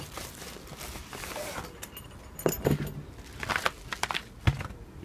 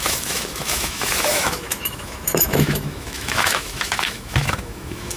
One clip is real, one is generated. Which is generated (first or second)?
second